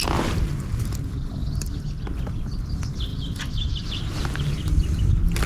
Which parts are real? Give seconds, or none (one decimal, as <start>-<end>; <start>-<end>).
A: 0.0-5.5